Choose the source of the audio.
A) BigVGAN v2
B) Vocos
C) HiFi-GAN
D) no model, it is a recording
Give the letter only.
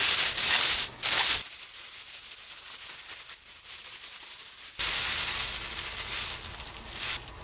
D